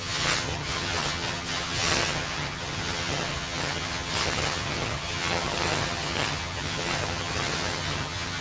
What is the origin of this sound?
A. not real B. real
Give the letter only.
A